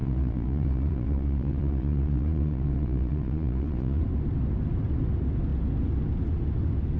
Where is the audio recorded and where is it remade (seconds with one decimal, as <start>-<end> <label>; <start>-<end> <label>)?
0.0-4.0 remade; 4.0-7.0 recorded